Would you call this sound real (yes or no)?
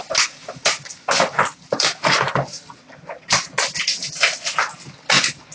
yes